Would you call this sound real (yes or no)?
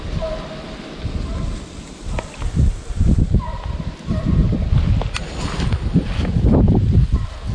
yes